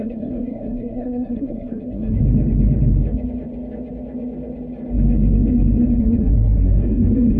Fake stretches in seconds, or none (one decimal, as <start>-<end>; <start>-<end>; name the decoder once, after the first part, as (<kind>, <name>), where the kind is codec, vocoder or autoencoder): 0.0-2.2 (codec, SNAC); 6.0-7.4